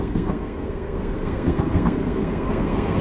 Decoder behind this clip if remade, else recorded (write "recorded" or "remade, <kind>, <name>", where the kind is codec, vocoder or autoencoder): remade, codec, SNAC